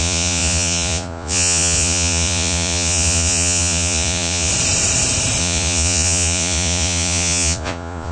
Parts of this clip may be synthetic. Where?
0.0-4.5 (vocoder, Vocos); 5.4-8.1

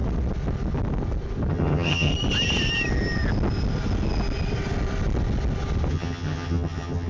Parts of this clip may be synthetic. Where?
1.5-2.1 (vocoder, HiFi-GAN); 5.9-7.1

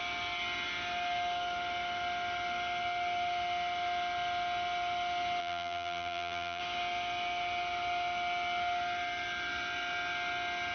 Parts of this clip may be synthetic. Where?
5.4-6.6 (vocoder, BigVGAN v2)

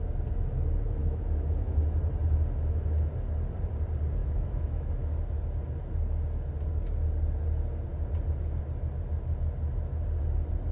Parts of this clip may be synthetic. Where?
1.0-1.8 (autoencoder, DAC-VAE); 4.2-4.9

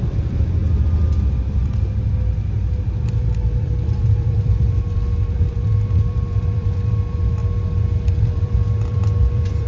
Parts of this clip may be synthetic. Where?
0.0-0.6 (vocoder, BigVGAN v2); 3.1-7.4; 8.2-9.7